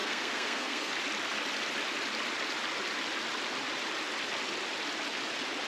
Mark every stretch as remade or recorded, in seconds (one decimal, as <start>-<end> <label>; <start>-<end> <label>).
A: 0.0-0.9 remade; 0.9-5.7 recorded